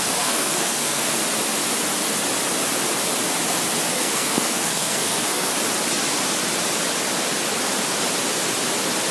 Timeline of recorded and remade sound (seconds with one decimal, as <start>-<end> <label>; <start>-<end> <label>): 0.0-1.2 remade; 1.2-3.9 recorded; 3.9-5.5 remade; 5.5-9.1 recorded